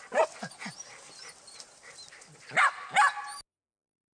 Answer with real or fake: real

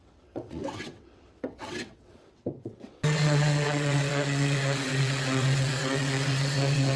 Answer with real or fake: fake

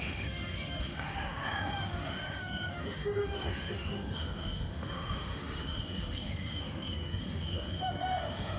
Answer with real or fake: fake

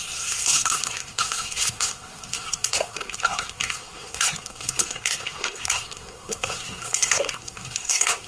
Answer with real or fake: fake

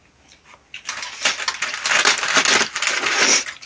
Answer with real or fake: real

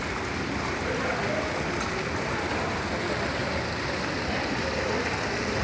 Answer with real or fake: real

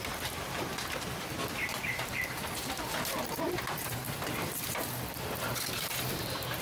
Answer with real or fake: fake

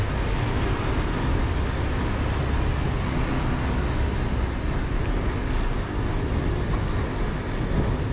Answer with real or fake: real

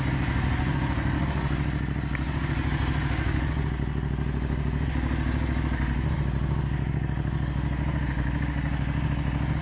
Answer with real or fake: real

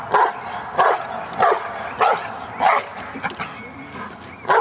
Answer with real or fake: real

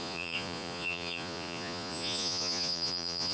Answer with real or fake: fake